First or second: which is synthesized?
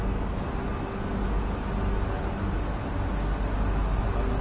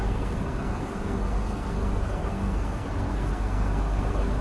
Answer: second